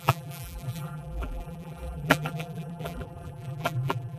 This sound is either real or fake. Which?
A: fake